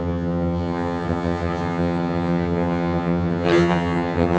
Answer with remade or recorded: remade